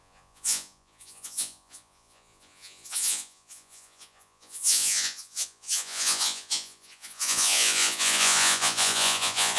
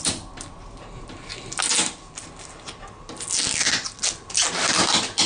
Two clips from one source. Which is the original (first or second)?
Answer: second